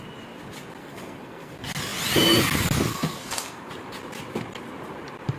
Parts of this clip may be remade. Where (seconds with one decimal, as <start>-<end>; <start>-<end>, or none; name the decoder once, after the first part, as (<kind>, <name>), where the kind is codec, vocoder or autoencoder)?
0.8-1.5 (codec, SNAC); 2.9-3.7